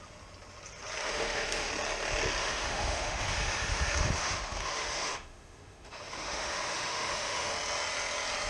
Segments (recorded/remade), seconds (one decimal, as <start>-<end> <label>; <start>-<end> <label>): 0.0-1.0 recorded; 1.0-1.7 remade; 1.7-2.4 recorded; 2.4-7.5 remade; 7.5-8.5 recorded